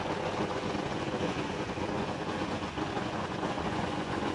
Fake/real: fake